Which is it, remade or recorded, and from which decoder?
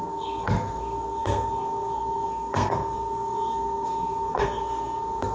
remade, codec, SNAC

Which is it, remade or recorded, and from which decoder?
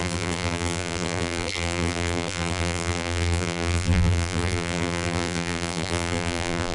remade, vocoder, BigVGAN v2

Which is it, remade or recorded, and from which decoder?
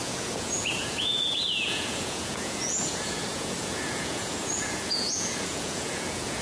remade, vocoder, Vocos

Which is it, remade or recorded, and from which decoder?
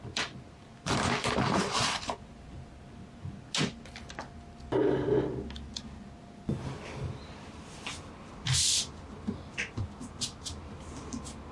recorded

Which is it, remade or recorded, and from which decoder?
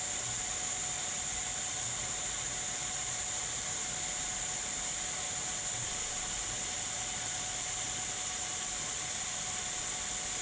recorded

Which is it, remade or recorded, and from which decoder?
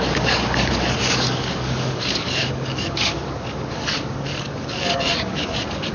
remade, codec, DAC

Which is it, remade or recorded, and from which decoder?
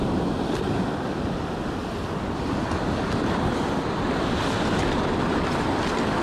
recorded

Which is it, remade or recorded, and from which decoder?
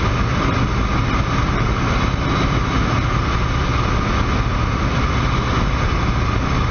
recorded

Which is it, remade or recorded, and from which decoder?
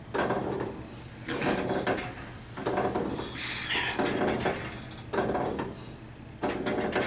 recorded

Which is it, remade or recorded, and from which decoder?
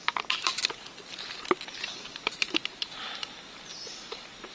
recorded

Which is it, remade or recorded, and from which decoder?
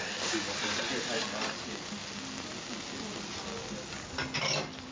recorded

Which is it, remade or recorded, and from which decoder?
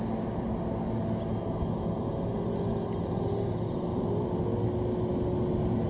recorded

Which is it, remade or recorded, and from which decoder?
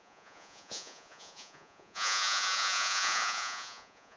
remade, vocoder, Vocos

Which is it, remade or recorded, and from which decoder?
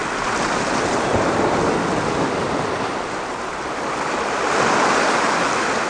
recorded